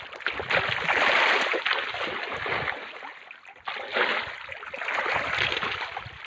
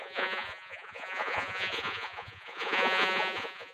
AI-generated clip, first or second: second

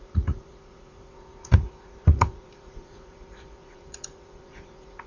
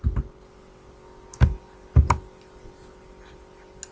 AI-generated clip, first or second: first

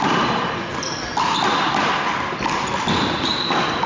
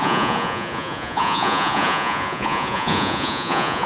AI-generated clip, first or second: second